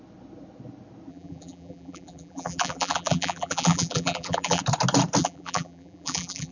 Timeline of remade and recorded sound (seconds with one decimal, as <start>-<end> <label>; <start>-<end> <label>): 0.0-1.1 recorded; 1.1-4.6 remade; 4.6-5.2 recorded; 5.2-6.5 remade